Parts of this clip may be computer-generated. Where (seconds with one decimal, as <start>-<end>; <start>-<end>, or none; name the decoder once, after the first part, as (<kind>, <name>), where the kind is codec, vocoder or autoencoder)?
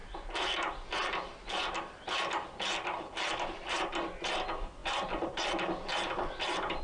none